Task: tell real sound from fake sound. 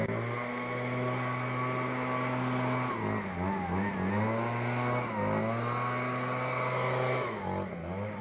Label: real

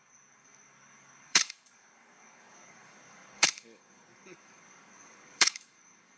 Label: fake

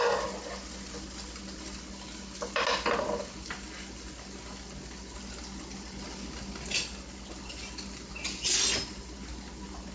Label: real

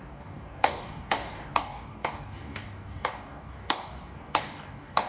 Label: fake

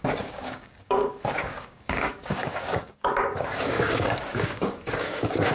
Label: fake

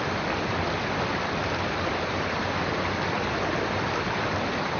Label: real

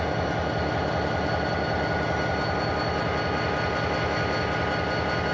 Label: real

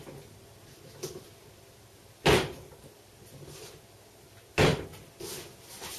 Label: real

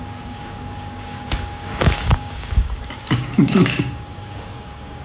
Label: fake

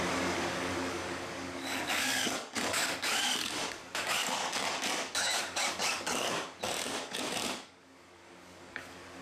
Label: fake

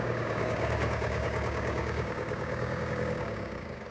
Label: fake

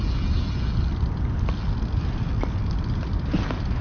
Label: real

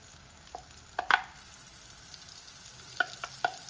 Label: real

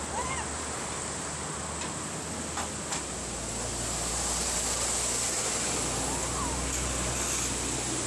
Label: real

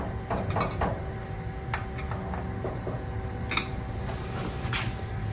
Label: real